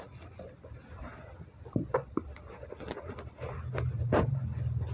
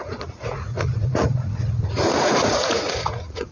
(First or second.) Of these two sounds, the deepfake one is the second